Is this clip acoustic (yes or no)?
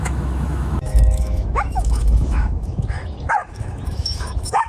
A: no